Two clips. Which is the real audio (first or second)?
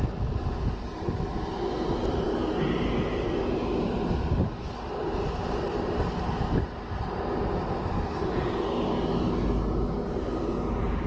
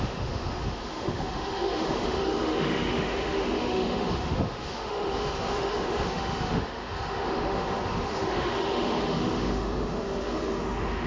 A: first